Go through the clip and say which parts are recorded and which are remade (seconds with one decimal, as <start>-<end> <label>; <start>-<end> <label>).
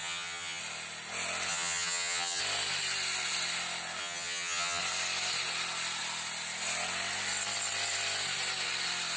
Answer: 0.0-0.6 remade; 0.6-1.5 recorded; 1.5-2.4 remade; 2.4-4.0 recorded; 4.0-4.8 remade; 4.8-9.2 recorded